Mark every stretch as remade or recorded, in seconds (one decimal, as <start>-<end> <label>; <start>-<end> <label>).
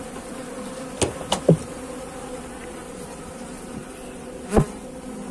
0.0-5.3 recorded